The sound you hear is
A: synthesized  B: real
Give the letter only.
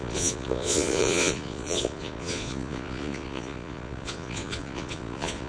A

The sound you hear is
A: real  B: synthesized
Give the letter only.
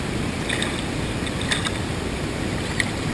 A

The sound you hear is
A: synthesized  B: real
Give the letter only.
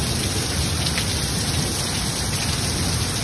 B